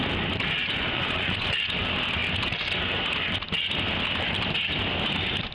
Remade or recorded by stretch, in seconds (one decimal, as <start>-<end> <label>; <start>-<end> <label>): 0.0-0.6 recorded; 0.6-1.5 remade; 1.5-5.5 recorded